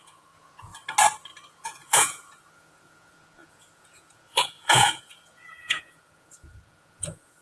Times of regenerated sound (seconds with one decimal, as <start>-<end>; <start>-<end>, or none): 0.0-0.7; 1.5-7.4